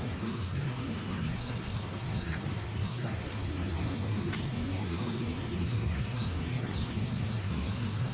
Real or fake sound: fake